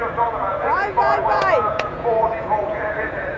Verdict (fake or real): fake